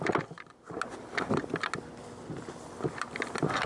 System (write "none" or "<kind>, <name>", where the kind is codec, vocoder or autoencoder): none